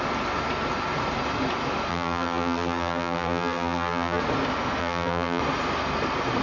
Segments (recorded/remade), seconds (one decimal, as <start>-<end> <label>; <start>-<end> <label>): 0.0-1.9 recorded; 1.9-4.2 remade; 4.2-4.8 recorded; 4.8-5.4 remade; 5.4-6.4 recorded